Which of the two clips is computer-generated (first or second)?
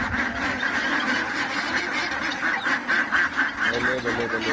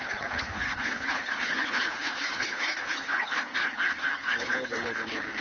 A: second